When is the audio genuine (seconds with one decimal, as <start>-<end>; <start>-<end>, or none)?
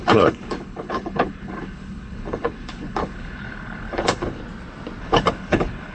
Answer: 4.4-5.0